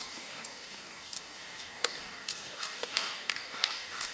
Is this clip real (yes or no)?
no